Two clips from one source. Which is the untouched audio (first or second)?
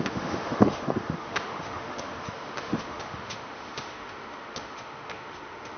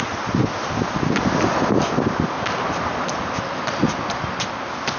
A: second